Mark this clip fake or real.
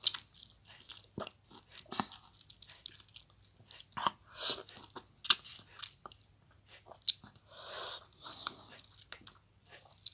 real